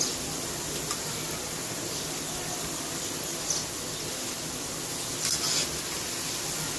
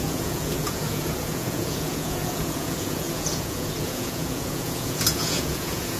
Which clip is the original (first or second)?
first